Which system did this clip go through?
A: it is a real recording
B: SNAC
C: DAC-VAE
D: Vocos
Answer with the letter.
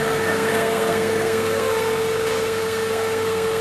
B